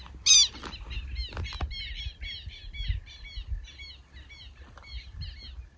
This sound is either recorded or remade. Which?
recorded